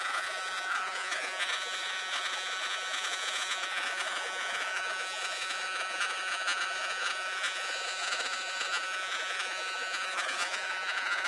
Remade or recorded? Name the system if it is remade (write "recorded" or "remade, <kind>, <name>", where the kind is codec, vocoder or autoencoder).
remade, vocoder, Vocos